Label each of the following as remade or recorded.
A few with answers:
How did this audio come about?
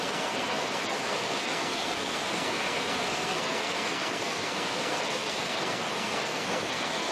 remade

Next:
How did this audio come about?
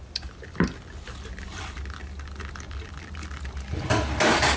recorded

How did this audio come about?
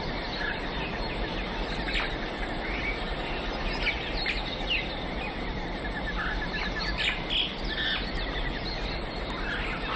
recorded